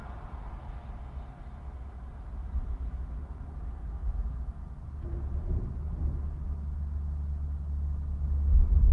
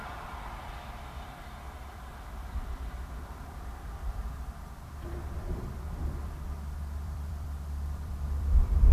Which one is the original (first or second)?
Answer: first